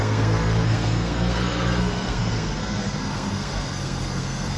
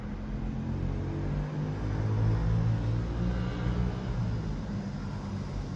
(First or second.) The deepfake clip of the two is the first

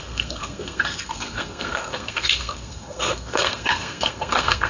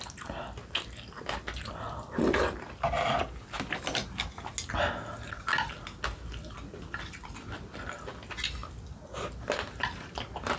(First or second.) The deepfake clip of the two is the first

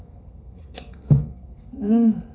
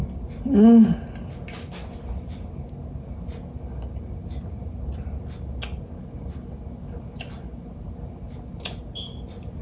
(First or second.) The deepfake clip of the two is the first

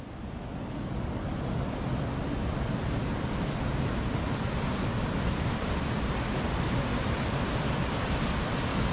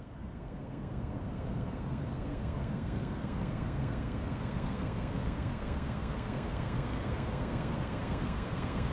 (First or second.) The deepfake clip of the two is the second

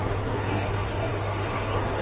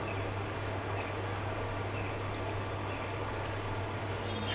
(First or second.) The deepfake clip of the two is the first